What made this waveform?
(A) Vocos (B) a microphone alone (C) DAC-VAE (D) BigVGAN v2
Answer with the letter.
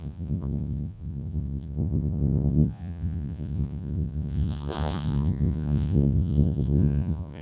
A